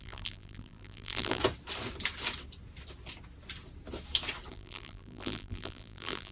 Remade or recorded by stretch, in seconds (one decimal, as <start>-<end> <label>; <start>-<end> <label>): 0.0-1.4 remade; 1.4-4.5 recorded; 4.5-6.3 remade